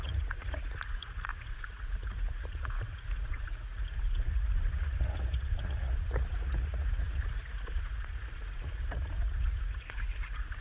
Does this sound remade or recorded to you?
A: remade